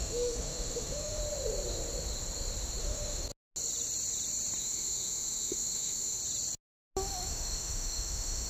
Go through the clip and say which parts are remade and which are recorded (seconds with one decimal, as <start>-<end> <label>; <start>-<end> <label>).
0.0-1.2 remade; 1.2-2.8 recorded; 2.8-3.3 remade; 3.3-4.6 recorded; 4.6-6.2 remade; 6.2-7.3 recorded; 7.3-8.5 remade